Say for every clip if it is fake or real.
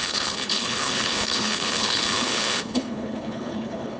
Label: fake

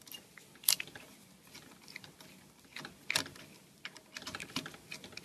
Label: real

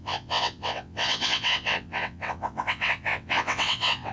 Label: fake